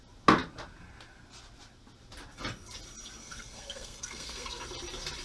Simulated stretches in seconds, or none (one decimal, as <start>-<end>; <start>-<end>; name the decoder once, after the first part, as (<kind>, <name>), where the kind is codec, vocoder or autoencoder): 3.2-4.6 (codec, SNAC)